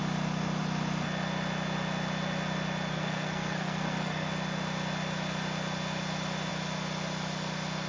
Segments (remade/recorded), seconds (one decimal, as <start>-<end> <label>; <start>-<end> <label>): 0.0-2.9 recorded; 2.9-4.3 remade; 4.3-7.9 recorded